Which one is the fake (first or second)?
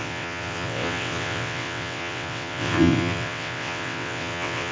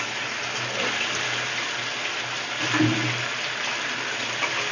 first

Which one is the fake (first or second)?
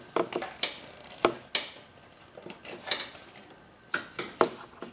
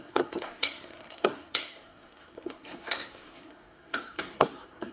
second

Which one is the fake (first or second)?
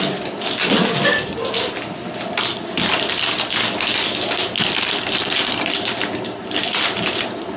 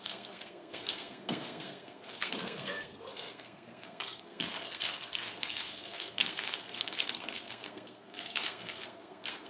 second